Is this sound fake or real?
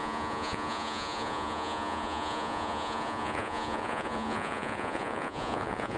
fake